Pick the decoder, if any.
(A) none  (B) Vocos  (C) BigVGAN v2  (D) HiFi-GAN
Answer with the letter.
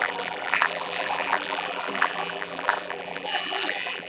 C